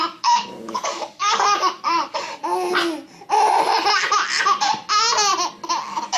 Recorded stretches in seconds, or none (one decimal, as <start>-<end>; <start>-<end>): 2.4-5.8